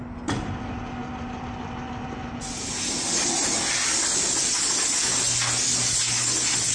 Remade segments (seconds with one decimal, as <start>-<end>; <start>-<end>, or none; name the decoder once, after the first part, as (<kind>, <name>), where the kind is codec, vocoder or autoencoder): none